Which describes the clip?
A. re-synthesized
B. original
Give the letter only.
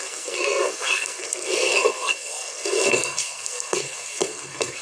A